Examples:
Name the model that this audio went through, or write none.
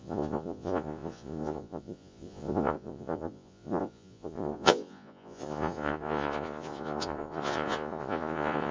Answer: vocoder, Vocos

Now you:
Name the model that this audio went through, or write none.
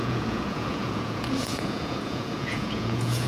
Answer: vocoder, Vocos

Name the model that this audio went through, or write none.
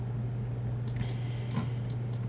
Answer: none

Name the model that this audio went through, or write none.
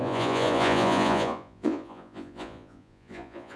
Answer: vocoder, Vocos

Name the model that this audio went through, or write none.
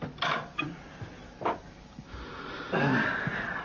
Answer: none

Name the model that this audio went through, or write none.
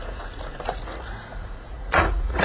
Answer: vocoder, Vocos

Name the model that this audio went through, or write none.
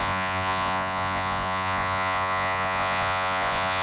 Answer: vocoder, Vocos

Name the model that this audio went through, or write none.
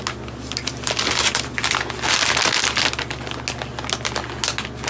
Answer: none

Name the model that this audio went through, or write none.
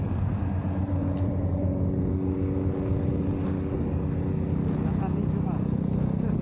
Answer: none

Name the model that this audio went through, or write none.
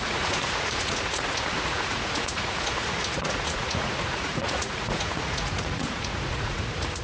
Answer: vocoder, Vocos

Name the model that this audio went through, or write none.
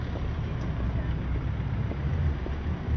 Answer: none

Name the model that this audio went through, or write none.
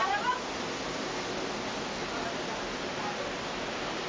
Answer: none